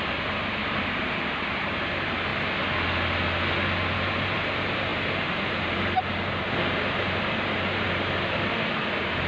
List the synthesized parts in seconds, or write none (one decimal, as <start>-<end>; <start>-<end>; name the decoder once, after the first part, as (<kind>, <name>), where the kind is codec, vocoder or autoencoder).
0.0-2.3 (vocoder, BigVGAN v2); 3.9-9.3